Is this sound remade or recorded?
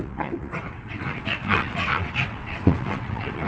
remade